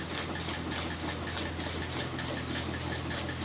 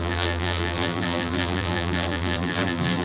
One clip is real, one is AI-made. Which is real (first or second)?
first